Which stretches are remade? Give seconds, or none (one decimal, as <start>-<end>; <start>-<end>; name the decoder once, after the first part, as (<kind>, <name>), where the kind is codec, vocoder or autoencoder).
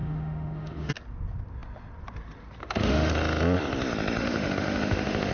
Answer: 0.0-0.9 (autoencoder, DAC-VAE); 2.6-3.1; 4.2-5.3